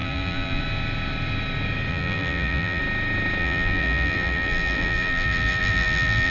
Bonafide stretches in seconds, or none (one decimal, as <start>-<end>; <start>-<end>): 0.6-1.9; 2.8-3.4